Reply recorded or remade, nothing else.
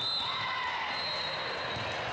recorded